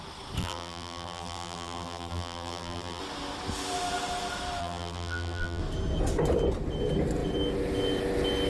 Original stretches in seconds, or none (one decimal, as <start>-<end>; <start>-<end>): 0.0-0.4; 3.0-4.6; 5.6-8.5